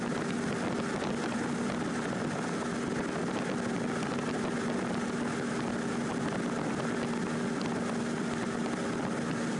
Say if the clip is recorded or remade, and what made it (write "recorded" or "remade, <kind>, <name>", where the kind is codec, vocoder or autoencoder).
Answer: recorded